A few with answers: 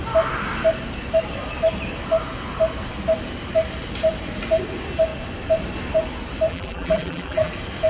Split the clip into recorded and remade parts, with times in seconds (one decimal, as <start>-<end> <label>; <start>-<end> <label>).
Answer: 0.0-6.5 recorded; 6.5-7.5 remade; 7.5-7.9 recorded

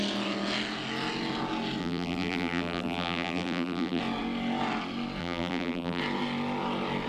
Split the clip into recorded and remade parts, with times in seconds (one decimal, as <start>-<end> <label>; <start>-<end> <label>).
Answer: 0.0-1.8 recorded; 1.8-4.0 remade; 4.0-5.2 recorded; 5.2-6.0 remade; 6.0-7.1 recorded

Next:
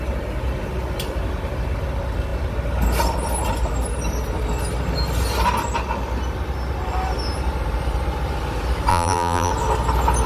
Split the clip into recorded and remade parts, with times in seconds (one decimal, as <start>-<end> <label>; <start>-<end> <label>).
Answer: 0.0-8.9 recorded; 8.9-9.5 remade; 9.5-10.3 recorded

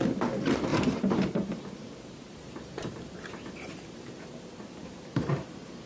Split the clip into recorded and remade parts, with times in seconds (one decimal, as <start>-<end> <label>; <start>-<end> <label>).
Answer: 0.0-0.7 recorded; 0.7-4.2 remade; 4.2-4.8 recorded; 4.8-5.9 remade

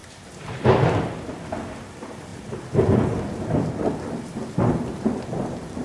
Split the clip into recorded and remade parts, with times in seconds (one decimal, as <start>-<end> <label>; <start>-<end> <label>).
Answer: 0.0-5.8 remade

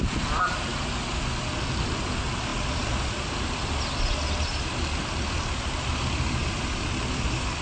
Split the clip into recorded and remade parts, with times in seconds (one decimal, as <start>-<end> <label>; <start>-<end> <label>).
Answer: 0.0-7.6 recorded

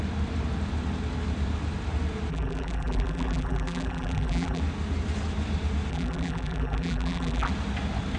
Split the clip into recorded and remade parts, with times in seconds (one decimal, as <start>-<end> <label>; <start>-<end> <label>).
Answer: 0.0-2.3 recorded; 2.3-4.6 remade; 4.6-5.9 recorded; 5.9-7.5 remade; 7.5-8.2 recorded